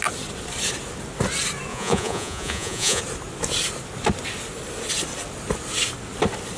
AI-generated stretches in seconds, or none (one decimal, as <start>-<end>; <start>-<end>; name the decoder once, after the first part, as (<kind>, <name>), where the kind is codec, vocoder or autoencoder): 1.7-3.0 (vocoder, Vocos)